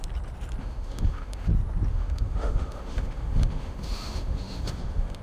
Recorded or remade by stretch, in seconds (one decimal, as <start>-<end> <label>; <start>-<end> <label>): 0.0-0.6 recorded; 0.6-1.5 remade; 1.5-1.9 recorded; 1.9-5.2 remade